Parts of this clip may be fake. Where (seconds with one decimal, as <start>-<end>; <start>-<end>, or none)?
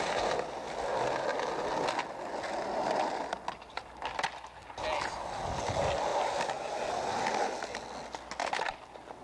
6.1-6.7; 8.4-9.2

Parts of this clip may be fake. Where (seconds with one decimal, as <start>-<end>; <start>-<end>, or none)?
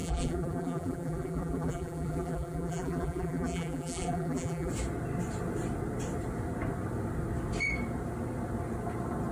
0.0-4.7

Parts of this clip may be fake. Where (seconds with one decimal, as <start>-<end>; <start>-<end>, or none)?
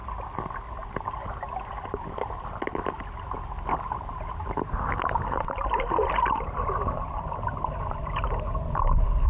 none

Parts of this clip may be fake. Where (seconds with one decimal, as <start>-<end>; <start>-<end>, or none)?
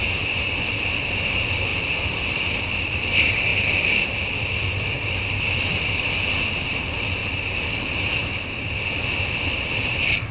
0.0-10.3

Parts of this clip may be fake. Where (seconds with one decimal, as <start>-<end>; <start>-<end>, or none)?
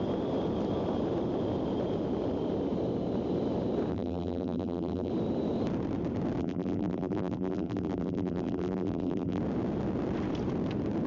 3.9-5.1; 6.4-9.4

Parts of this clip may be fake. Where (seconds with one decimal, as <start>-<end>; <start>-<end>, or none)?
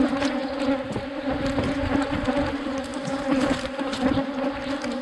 2.9-4.0